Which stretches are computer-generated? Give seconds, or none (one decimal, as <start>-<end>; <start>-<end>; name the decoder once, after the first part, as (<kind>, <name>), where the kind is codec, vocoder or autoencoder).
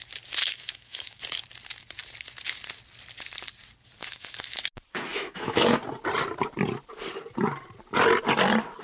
0.4-1.2 (autoencoder, DAC-VAE); 4.0-4.6; 5.1-5.8